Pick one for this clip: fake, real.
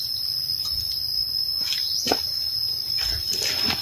real